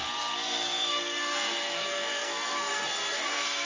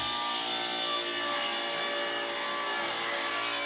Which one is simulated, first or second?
first